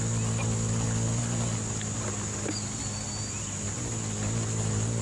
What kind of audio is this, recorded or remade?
recorded